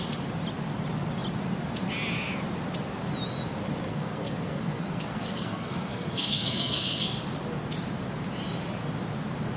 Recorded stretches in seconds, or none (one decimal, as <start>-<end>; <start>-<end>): 0.0-3.9; 7.2-9.6